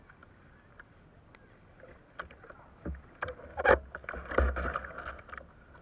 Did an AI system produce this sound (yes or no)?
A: no